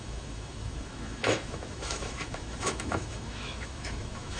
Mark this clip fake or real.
fake